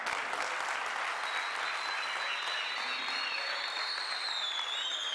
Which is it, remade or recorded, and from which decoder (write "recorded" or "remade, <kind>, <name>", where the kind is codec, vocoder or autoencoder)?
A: recorded